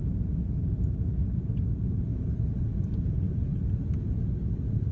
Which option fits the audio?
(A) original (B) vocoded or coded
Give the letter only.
A